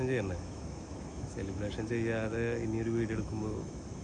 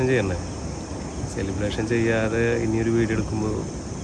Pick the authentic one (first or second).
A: second